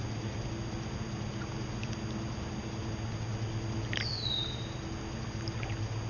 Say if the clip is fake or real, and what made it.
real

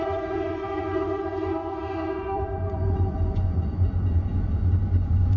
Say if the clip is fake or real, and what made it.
fake, vocoder, Vocos